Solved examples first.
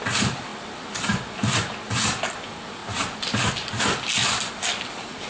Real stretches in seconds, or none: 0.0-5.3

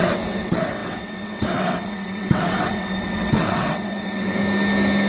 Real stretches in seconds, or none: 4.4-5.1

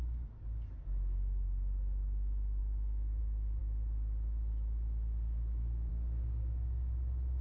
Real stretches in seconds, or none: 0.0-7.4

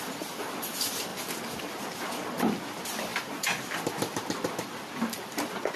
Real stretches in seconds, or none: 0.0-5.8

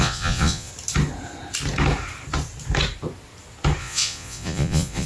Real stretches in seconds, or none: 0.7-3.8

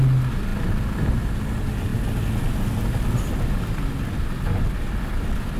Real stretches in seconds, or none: 0.0-5.6

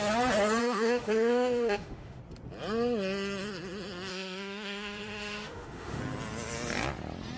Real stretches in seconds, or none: 0.0-0.6; 2.2-4.1; 6.0-7.4

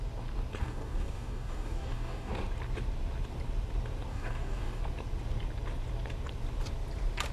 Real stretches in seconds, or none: 0.0-0.6; 2.3-4.1; 4.8-7.3